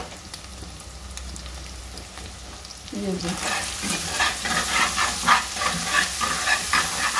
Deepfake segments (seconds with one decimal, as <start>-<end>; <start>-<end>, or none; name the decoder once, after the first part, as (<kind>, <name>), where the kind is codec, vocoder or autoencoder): 3.2-3.8 (vocoder, BigVGAN v2)